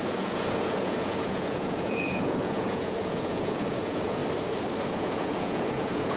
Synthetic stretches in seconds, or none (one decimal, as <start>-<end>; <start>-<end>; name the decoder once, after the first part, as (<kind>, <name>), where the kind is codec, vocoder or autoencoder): 0.0-4.2 (vocoder, Vocos); 4.9-6.2